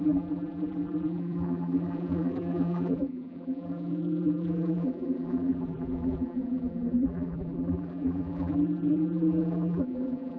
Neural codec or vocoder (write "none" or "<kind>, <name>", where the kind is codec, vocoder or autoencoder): vocoder, BigVGAN v2